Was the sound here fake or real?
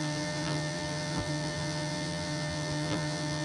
fake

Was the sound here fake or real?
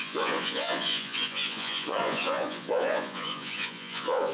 fake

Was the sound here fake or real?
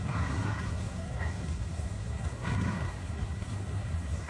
fake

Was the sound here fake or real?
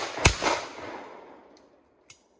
real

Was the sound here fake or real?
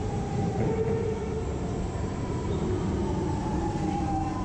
real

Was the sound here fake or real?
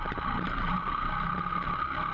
real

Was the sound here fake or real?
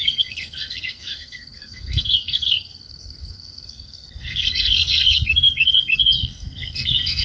fake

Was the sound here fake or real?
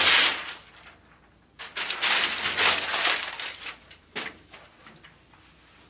real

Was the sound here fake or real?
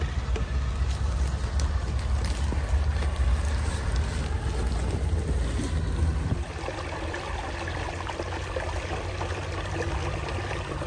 real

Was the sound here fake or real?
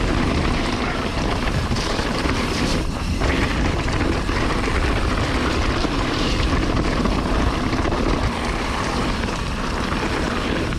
fake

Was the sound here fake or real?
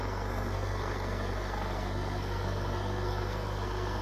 fake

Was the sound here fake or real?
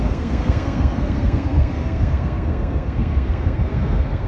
fake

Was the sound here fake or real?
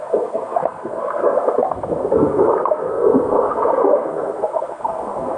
fake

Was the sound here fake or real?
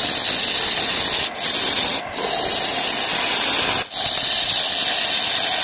real